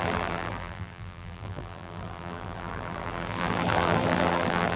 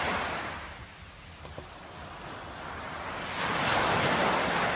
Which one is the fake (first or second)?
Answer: first